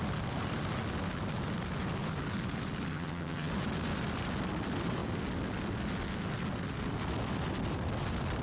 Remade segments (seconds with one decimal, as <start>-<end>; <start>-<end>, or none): 2.9-3.5